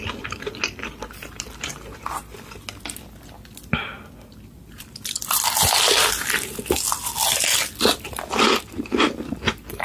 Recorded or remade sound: remade